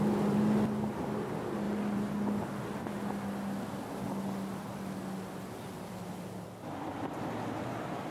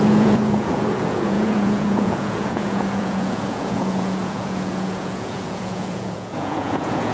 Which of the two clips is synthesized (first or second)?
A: second